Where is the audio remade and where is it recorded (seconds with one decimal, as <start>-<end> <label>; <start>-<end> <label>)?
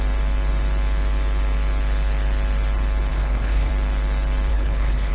0.0-3.1 recorded; 3.1-3.7 remade; 3.7-4.5 recorded; 4.5-5.1 remade